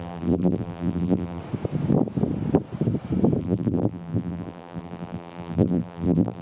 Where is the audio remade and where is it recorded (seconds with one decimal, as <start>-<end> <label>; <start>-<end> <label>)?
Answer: 0.0-1.4 remade; 1.4-3.4 recorded; 3.4-6.4 remade